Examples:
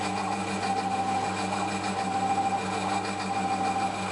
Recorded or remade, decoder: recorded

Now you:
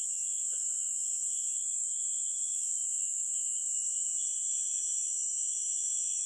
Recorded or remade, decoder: remade, vocoder, Vocos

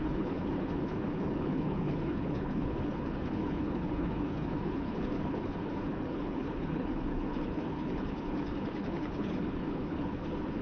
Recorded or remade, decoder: remade, codec, HILCodec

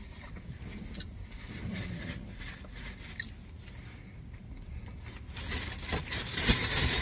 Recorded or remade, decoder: recorded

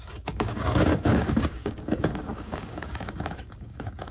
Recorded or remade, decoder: remade, codec, DAC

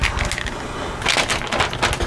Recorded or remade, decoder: recorded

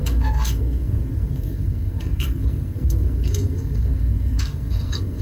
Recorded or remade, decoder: remade, codec, SNAC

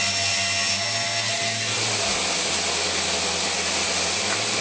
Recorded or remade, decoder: recorded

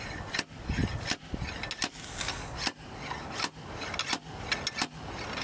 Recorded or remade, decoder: recorded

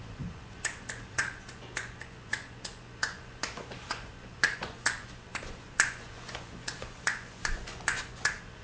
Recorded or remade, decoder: remade, vocoder, Vocos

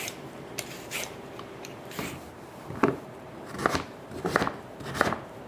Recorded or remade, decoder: remade, vocoder, BigVGAN v2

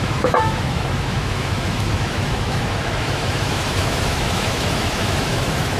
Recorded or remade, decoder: remade, autoencoder, DAC-VAE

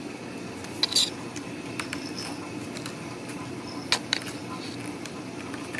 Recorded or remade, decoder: recorded